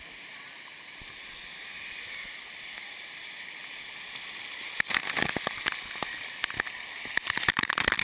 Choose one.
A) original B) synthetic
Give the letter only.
A